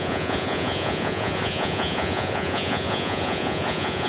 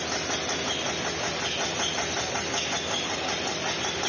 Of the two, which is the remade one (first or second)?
first